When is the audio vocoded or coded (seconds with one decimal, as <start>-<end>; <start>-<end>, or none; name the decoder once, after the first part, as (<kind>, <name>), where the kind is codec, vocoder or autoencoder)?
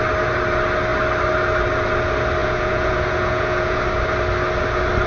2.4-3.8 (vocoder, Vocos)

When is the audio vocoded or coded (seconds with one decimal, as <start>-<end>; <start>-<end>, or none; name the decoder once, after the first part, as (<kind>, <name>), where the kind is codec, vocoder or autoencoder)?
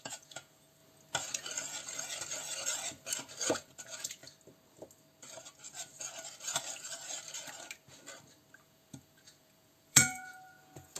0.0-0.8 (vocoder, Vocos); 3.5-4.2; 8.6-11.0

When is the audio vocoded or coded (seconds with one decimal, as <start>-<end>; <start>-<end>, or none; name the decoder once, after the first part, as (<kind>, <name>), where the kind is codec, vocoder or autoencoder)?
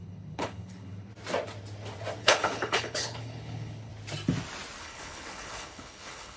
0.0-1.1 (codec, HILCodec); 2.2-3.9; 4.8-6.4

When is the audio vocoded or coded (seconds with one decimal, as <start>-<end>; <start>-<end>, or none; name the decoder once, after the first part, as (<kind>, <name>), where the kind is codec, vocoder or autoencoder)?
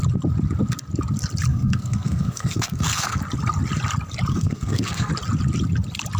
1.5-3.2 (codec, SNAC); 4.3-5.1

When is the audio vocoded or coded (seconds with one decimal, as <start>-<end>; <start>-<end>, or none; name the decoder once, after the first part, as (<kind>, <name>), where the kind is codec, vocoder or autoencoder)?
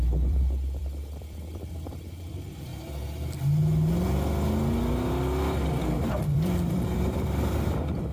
0.0-2.7 (vocoder, BigVGAN v2); 5.8-8.1